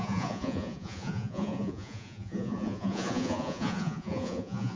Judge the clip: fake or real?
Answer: fake